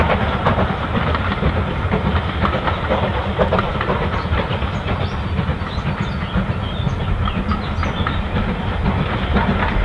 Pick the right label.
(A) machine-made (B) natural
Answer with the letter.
B